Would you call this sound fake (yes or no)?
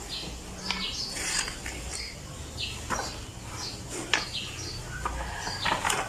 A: no